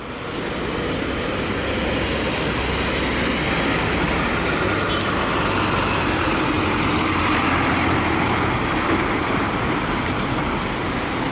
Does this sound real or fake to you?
real